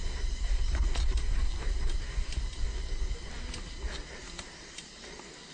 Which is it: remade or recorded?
recorded